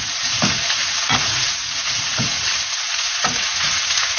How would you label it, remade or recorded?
remade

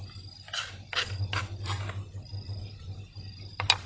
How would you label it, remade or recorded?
recorded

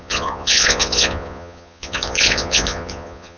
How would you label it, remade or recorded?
remade